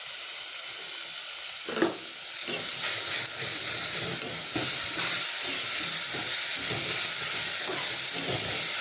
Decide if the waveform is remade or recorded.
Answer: recorded